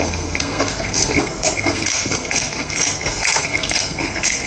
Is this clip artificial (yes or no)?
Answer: yes